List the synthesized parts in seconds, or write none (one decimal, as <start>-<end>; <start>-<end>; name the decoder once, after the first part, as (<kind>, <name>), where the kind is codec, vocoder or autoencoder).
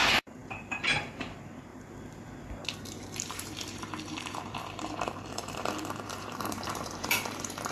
0.0-1.7 (vocoder, BigVGAN v2); 2.7-7.7